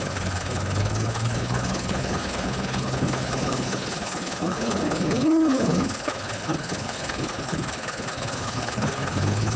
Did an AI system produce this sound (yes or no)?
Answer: yes